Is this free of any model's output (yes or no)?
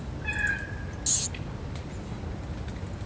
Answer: yes